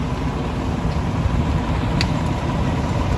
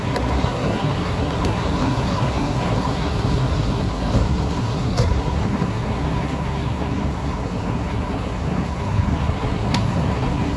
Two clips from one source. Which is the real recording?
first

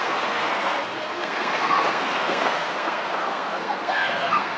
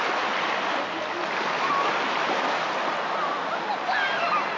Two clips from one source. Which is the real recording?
second